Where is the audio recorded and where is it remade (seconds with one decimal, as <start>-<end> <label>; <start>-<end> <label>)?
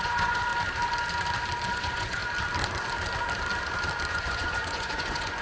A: 0.0-0.5 remade; 0.5-1.7 recorded; 1.7-2.2 remade; 2.2-4.1 recorded; 4.1-5.4 remade